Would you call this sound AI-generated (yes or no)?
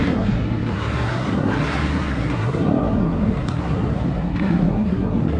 yes